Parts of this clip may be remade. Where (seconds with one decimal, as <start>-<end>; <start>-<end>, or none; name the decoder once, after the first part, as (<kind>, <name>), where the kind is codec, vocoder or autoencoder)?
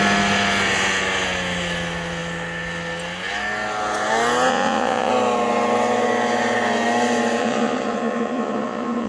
4.5-5.1 (vocoder, Vocos); 7.4-9.1